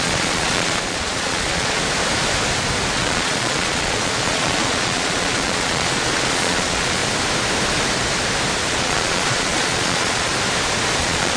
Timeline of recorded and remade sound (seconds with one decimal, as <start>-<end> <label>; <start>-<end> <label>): 0.0-1.8 remade; 1.8-2.9 recorded; 2.9-7.0 remade; 7.0-8.7 recorded; 8.7-10.3 remade; 10.3-11.0 recorded; 11.0-11.4 remade